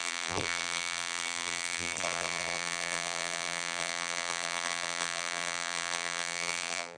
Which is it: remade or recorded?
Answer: remade